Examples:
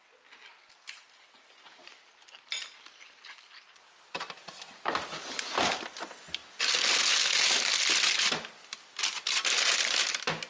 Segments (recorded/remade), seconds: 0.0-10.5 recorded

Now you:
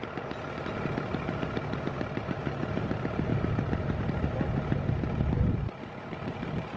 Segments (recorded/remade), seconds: 0.0-6.8 recorded

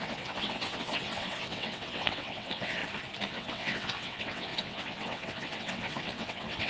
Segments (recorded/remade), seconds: 0.0-2.8 remade; 2.8-3.3 recorded; 3.3-6.7 remade

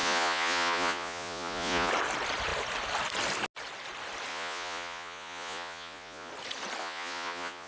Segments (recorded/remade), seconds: 0.0-1.9 remade; 1.9-4.3 recorded; 4.3-6.3 remade; 6.3-6.8 recorded; 6.8-7.7 remade

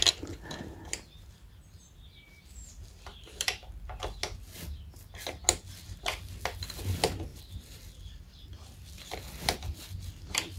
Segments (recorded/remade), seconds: 0.0-3.1 recorded; 3.1-3.7 remade; 3.7-7.3 recorded; 7.3-7.8 remade; 7.8-10.6 recorded